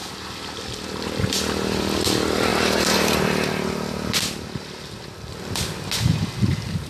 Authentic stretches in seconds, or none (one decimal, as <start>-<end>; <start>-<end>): 0.0-6.9